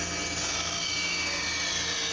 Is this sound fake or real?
real